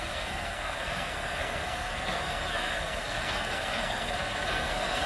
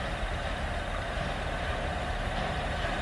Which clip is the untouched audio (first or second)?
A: second